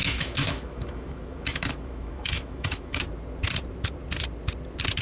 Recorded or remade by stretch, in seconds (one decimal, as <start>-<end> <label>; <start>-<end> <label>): 0.0-3.0 remade; 3.0-5.0 recorded